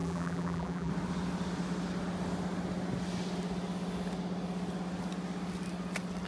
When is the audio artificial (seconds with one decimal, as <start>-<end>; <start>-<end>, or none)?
0.0-0.9

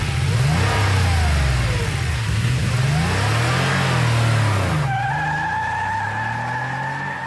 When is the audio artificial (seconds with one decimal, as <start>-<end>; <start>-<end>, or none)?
2.1-2.7